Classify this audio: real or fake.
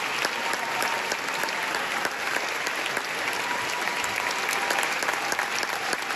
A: real